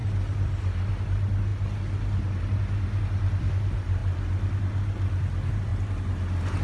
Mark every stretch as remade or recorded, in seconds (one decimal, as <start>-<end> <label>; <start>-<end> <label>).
0.0-6.6 recorded